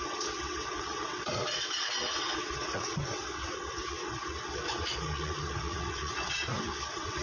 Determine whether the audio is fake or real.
fake